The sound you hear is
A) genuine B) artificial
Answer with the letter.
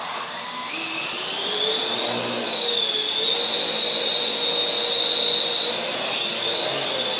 A